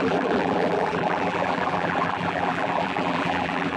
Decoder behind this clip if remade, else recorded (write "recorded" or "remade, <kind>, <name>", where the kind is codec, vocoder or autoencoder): remade, vocoder, BigVGAN v2